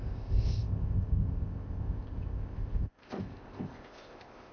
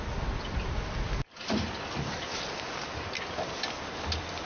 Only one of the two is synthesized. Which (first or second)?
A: first